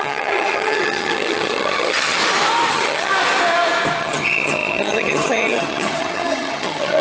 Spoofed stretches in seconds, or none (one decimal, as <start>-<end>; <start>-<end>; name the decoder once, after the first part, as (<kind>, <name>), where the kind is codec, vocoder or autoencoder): 0.0-2.2 (vocoder, HiFi-GAN); 2.7-3.1; 4.0-7.0